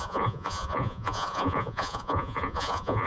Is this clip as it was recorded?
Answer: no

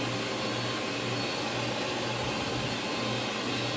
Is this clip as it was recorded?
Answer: yes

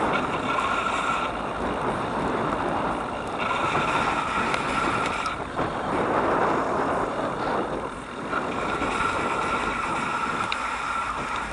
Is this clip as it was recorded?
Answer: yes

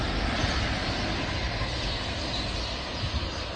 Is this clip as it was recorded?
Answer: yes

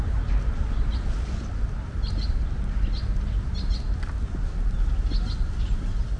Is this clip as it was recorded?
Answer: yes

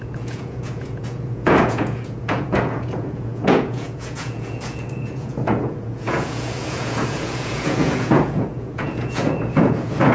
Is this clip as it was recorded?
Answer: no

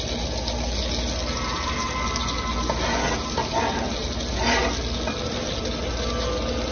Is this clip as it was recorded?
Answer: yes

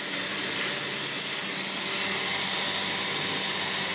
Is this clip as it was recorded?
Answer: yes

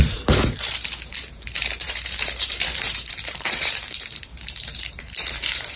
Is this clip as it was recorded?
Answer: no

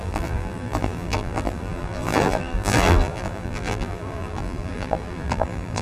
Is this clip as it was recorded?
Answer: no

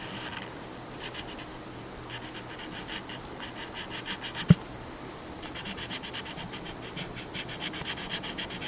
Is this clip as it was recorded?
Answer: yes